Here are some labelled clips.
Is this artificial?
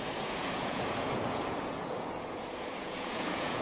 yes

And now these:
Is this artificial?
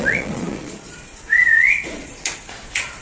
yes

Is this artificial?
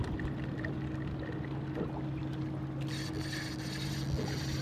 no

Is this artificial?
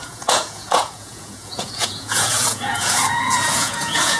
yes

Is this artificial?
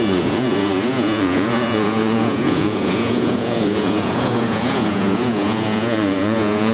yes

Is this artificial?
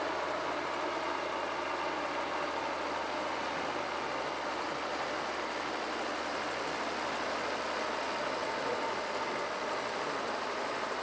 no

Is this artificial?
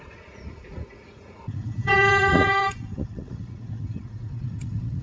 yes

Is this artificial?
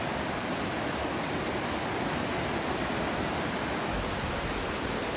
no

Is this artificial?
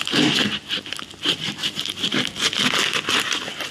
no